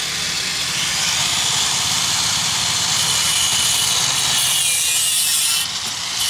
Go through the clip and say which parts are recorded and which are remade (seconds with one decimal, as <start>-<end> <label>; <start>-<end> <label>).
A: 0.0-1.2 recorded; 1.2-2.5 remade; 2.5-6.3 recorded